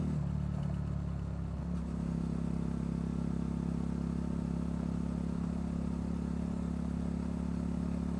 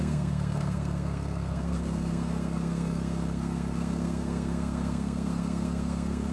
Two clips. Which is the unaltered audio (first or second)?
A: first